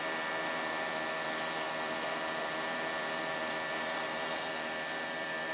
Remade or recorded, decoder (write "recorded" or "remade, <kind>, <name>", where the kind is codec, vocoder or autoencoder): remade, vocoder, BigVGAN v2